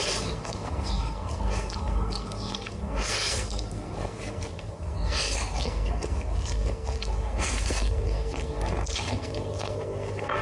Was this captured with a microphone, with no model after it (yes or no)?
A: no